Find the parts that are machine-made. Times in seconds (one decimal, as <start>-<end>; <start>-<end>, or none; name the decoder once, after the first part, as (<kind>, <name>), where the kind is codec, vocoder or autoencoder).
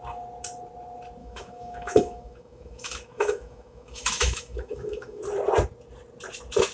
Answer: 1.2-5.2 (autoencoder, DAC-VAE)